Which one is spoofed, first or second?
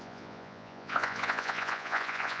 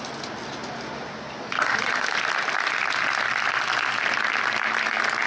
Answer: first